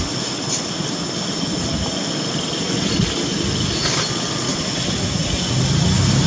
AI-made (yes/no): no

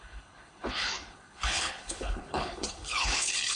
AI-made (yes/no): yes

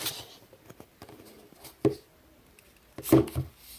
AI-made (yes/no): no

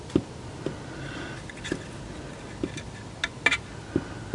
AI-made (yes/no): no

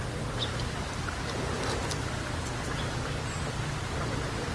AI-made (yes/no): no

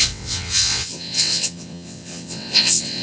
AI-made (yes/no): yes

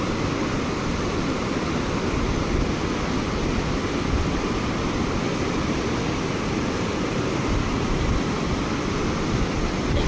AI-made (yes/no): no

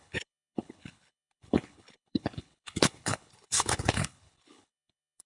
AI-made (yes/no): yes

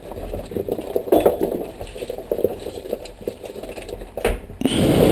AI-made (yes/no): no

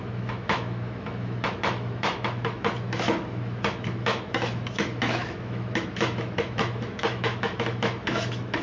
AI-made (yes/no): yes